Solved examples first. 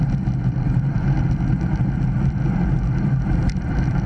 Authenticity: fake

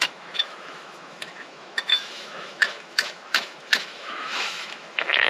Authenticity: fake